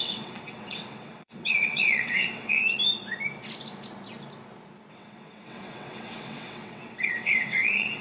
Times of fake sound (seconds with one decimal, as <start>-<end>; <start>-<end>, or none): 0.0-2.6; 4.9-8.0